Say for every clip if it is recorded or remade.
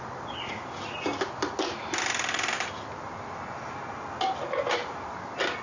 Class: recorded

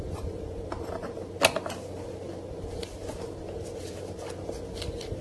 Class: recorded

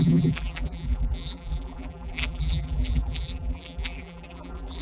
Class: remade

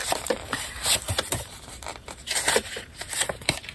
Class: remade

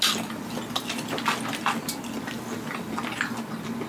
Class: recorded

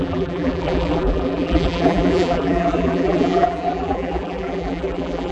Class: remade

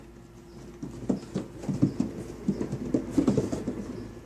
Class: recorded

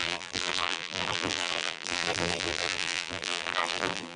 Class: remade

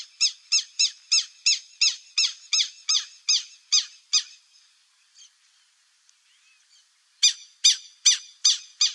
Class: recorded